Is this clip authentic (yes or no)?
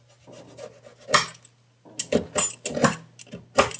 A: yes